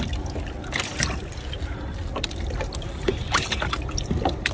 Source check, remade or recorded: recorded